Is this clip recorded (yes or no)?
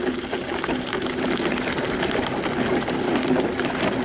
yes